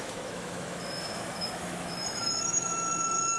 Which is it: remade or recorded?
remade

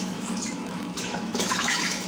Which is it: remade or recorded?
remade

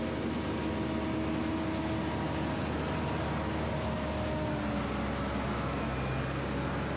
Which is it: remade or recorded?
recorded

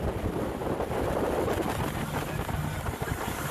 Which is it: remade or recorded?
recorded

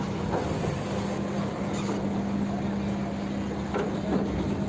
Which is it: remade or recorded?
recorded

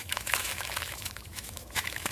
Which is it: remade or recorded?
remade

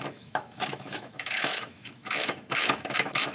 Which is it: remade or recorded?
remade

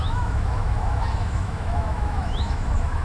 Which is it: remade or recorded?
remade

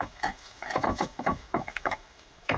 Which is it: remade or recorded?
remade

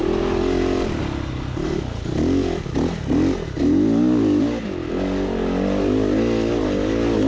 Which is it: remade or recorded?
recorded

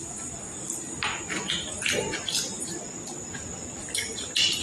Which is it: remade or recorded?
recorded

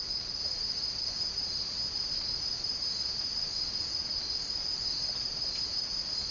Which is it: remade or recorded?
recorded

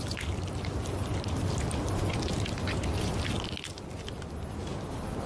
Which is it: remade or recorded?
recorded